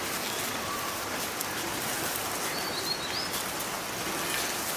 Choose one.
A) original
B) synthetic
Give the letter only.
A